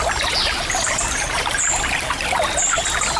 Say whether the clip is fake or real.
real